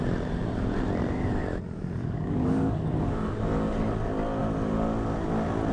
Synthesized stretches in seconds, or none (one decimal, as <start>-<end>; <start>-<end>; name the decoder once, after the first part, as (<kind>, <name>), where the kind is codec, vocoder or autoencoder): 2.0-3.4 (codec, DAC)